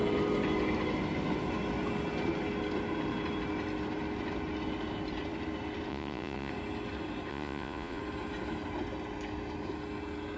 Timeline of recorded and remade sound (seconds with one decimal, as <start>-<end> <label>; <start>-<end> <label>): 0.0-5.9 recorded; 5.9-6.5 remade; 6.5-7.3 recorded; 7.3-8.0 remade; 8.0-10.4 recorded